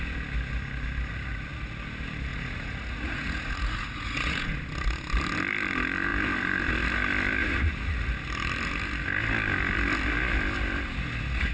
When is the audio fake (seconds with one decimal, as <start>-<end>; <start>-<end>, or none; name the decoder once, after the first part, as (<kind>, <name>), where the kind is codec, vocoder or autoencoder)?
2.3-4.6 (vocoder, Vocos); 7.4-8.1